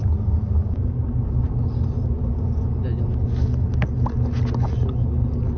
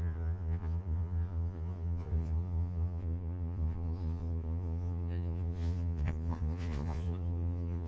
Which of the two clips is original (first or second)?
first